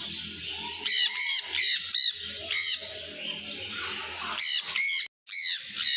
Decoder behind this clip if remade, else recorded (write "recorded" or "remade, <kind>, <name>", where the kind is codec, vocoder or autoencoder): recorded